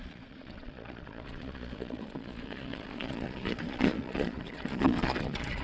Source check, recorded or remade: remade